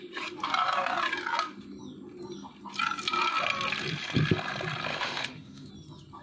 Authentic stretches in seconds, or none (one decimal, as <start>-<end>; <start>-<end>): 0.0-4.9; 5.7-6.2